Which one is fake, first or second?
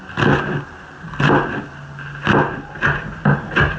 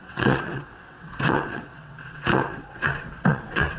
second